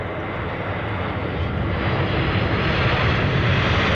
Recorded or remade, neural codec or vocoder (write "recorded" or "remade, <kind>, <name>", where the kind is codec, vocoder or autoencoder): recorded